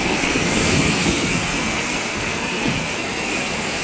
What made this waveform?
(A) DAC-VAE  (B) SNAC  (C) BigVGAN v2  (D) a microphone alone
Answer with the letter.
B